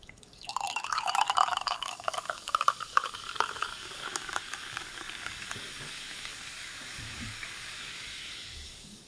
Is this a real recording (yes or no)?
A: no